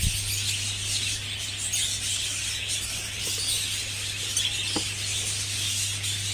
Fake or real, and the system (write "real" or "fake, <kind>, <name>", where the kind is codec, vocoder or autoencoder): real